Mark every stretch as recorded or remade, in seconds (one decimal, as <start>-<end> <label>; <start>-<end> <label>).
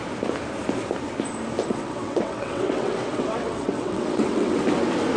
0.0-1.7 recorded; 1.7-4.6 remade; 4.6-5.2 recorded